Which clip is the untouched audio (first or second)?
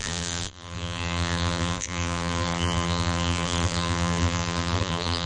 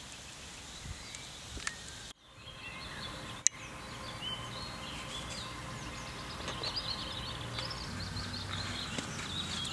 second